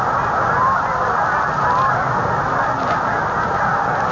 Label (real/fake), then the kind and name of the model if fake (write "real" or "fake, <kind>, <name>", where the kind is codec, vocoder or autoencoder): real